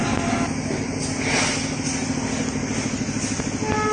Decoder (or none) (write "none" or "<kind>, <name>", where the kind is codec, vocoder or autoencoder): none